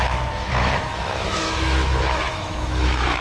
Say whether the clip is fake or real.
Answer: fake